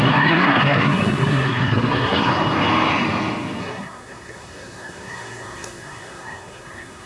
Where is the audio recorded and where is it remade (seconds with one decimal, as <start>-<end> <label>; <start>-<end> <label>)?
0.0-2.3 remade; 2.3-3.6 recorded; 3.6-7.1 remade